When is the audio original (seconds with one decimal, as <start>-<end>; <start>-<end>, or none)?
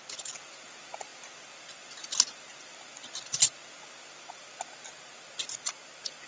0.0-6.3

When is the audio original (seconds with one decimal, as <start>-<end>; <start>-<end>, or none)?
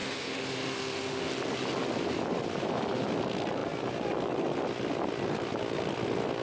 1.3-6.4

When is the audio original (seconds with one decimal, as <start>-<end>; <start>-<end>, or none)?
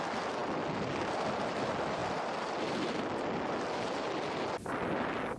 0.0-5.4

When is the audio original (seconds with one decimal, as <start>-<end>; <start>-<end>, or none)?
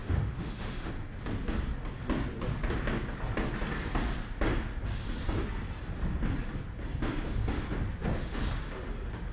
0.9-9.3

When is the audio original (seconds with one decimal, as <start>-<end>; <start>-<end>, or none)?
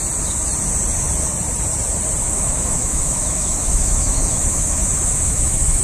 0.0-2.2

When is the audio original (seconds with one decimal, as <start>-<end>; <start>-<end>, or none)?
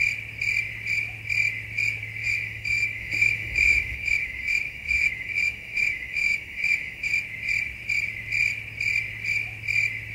0.0-2.2; 7.1-10.1